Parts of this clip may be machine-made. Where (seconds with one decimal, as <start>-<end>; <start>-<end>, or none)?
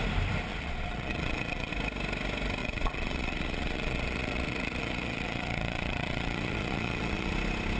0.5-1.7; 2.6-7.3